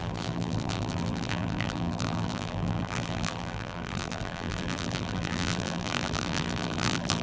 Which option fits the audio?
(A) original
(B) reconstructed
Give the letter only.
B